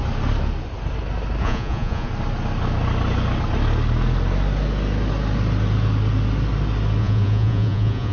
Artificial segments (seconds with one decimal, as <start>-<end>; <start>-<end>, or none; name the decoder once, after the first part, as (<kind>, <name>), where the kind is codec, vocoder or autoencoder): 1.4-2.1 (vocoder, Vocos); 7.0-8.1